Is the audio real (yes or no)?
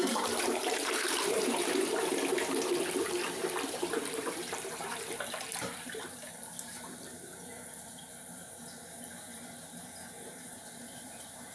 no